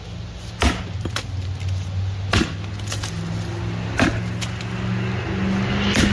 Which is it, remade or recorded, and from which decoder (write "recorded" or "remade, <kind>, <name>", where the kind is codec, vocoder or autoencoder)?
recorded